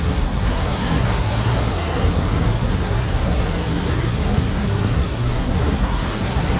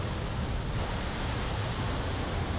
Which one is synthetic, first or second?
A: first